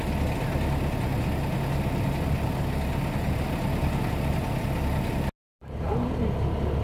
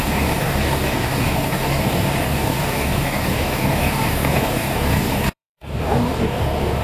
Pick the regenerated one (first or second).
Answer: second